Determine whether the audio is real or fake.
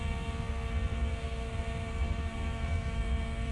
fake